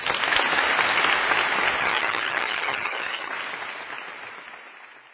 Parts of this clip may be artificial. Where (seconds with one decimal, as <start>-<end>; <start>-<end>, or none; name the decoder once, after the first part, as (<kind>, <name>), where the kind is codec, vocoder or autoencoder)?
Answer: 1.8-3.3 (vocoder, HiFi-GAN)